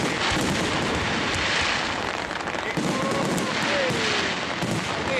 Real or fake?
real